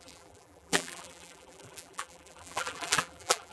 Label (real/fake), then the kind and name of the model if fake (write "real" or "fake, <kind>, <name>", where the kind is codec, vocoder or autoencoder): fake, vocoder, BigVGAN v2